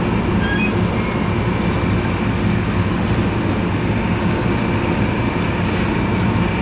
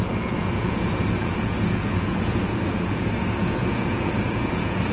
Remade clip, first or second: second